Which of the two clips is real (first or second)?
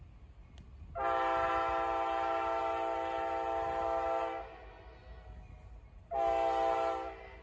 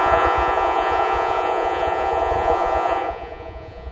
first